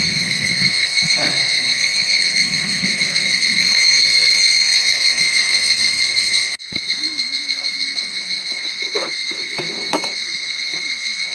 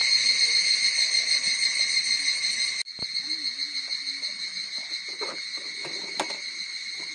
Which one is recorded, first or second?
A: second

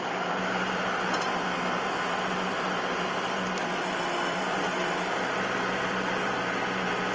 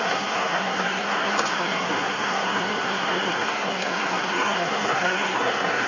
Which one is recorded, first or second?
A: first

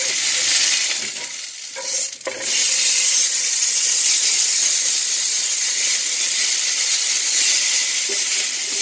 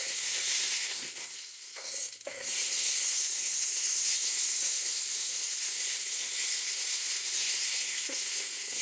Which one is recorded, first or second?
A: first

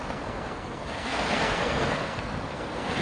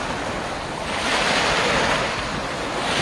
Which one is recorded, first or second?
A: second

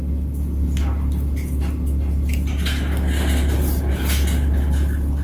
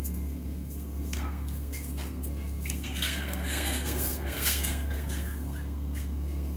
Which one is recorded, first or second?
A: first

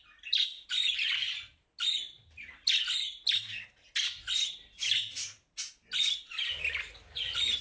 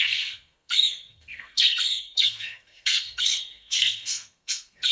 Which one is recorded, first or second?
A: first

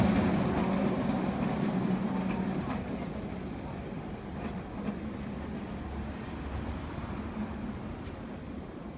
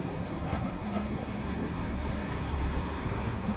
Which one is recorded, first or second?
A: first